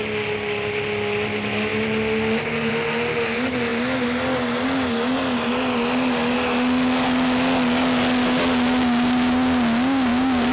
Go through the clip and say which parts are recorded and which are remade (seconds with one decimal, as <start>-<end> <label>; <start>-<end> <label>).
0.0-10.5 recorded